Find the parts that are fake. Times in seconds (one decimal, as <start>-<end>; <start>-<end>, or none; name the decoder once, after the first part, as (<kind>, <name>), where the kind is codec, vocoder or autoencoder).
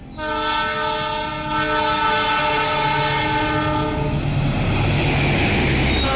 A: none